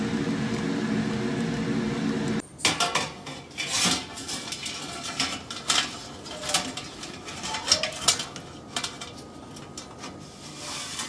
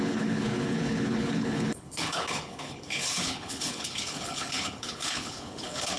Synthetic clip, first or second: second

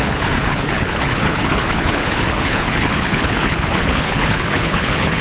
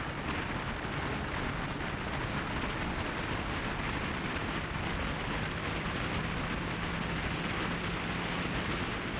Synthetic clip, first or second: first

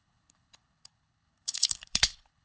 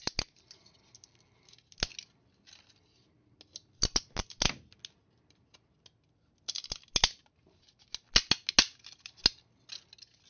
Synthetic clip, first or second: first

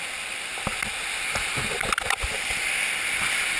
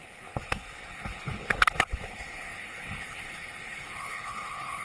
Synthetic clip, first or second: second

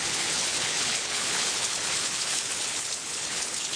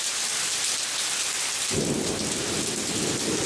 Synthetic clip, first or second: first